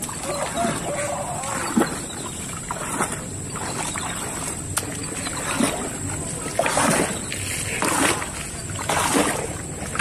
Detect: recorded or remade recorded